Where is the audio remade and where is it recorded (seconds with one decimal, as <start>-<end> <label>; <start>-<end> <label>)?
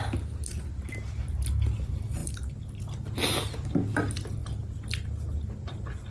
0.0-6.1 recorded